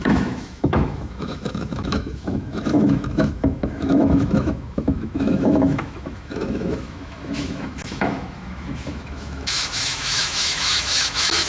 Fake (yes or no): yes